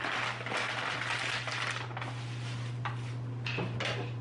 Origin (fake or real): fake